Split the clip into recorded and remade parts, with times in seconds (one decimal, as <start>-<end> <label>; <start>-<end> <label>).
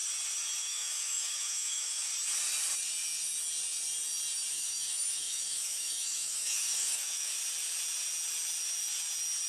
0.0-0.6 recorded; 0.6-2.1 remade; 2.1-4.5 recorded; 4.5-7.3 remade; 7.3-9.5 recorded